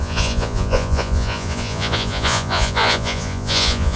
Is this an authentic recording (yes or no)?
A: no